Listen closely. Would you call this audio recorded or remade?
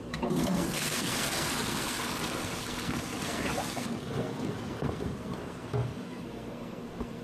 remade